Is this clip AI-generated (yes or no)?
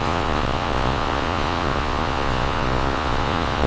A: yes